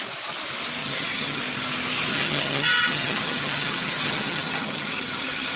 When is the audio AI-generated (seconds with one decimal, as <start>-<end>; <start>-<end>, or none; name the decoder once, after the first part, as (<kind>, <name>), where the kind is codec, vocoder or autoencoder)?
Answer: 0.8-1.4 (vocoder, HiFi-GAN); 2.1-5.6